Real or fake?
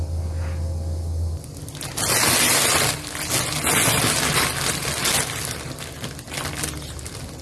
real